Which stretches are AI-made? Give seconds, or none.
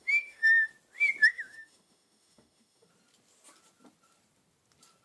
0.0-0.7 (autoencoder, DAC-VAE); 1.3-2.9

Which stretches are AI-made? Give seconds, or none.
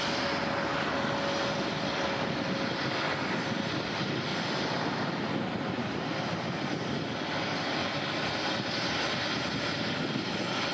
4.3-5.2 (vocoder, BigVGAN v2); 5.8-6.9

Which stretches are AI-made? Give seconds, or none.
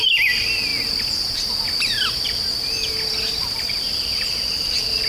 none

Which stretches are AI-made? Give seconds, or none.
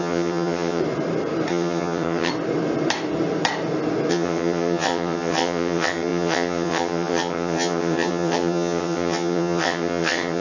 0.0-0.8 (vocoder, HiFi-GAN); 1.5-2.3; 4.1-10.4